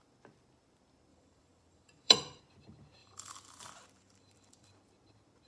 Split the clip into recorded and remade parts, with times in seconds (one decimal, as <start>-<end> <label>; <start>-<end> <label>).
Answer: 0.0-1.1 recorded; 1.1-2.4 remade; 2.4-3.0 recorded; 3.0-4.7 remade; 4.7-5.5 recorded